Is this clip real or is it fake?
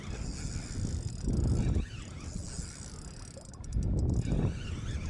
real